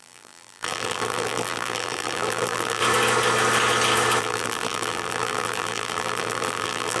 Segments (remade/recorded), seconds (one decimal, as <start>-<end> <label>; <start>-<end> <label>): 0.0-2.8 remade; 2.8-4.2 recorded; 4.2-7.0 remade